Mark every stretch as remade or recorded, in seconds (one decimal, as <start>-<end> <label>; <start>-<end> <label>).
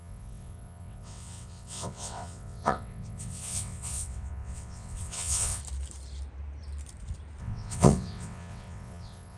0.0-5.6 remade; 5.6-7.4 recorded; 7.4-9.4 remade